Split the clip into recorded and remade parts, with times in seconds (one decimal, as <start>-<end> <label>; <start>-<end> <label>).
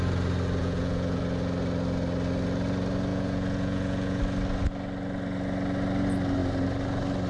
0.0-0.6 recorded; 0.6-1.2 remade; 1.2-3.1 recorded; 3.1-4.2 remade; 4.2-7.3 recorded